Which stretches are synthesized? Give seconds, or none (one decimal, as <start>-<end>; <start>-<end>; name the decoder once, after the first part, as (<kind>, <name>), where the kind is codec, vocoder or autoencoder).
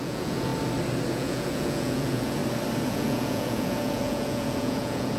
0.0-0.5 (vocoder, Vocos); 1.1-2.4; 2.9-5.2